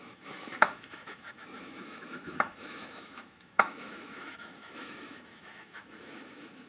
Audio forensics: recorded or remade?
remade